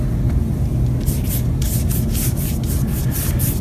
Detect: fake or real real